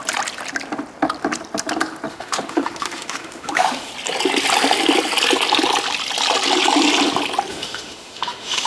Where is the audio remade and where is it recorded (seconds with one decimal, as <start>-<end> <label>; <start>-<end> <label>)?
0.0-2.1 recorded; 2.1-3.9 remade; 3.9-7.5 recorded; 7.5-8.7 remade